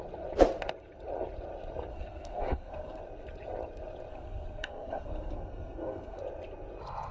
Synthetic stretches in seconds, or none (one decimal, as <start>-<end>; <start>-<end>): 1.9-3.0; 4.1-6.2